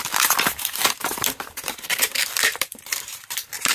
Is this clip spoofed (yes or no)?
yes